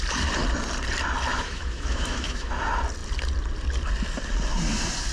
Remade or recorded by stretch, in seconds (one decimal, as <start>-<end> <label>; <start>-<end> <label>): 0.0-1.3 recorded; 1.3-2.5 remade; 2.5-5.1 recorded